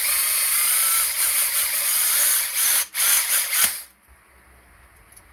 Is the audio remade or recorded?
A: remade